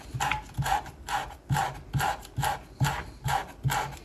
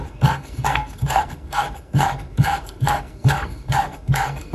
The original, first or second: first